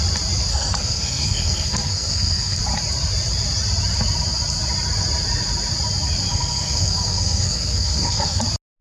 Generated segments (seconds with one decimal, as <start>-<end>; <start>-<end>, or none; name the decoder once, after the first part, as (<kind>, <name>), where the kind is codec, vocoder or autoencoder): 0.5-2.6 (codec, SNAC); 6.3-8.4